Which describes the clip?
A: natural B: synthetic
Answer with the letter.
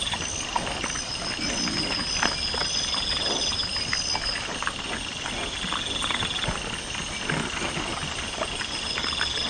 A